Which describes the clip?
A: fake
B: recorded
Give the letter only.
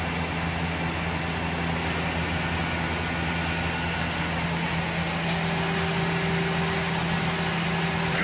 B